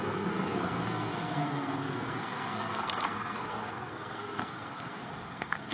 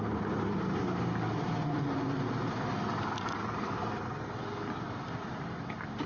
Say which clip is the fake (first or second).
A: first